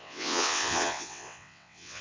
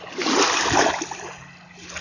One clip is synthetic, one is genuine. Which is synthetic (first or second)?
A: first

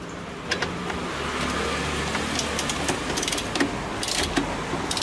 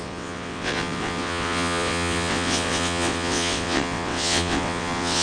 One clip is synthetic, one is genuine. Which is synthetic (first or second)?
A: second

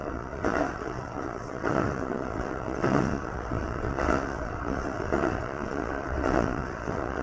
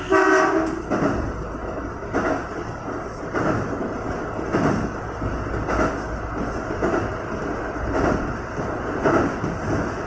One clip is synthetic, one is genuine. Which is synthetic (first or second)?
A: first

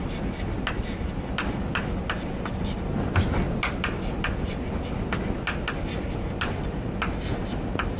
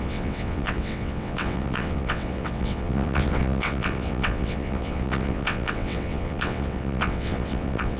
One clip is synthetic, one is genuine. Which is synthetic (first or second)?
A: second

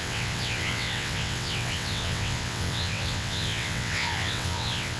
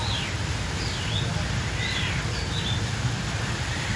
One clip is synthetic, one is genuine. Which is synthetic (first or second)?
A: first